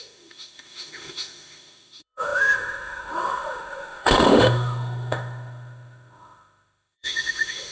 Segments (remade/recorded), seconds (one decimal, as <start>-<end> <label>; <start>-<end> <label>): 0.0-7.7 remade